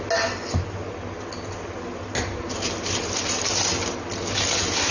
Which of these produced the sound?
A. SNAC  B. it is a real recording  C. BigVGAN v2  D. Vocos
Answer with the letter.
B